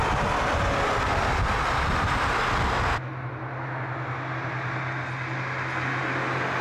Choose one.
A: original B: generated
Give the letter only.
A